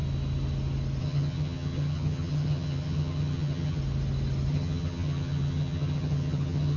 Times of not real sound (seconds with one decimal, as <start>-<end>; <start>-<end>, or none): 1.0-3.8; 4.5-6.8